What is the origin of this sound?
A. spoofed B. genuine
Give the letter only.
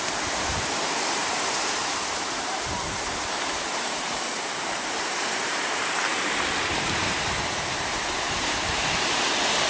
A